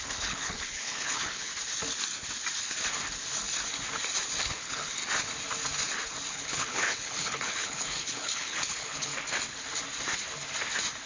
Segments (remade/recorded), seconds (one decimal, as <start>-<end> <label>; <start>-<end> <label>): 0.0-1.5 remade; 1.5-4.4 recorded; 4.4-5.0 remade; 5.0-6.3 recorded; 6.3-9.1 remade; 9.1-11.1 recorded